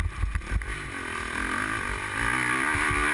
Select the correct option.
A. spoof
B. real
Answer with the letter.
B